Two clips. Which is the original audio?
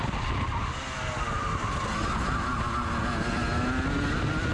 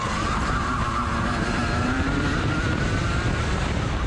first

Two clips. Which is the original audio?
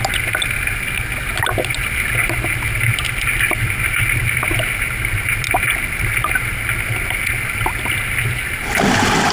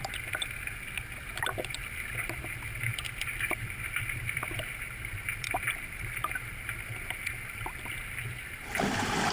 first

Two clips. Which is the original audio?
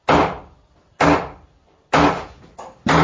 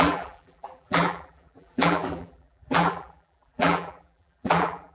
first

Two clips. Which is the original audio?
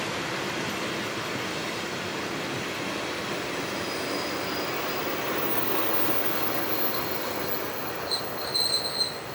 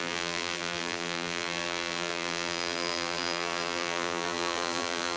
first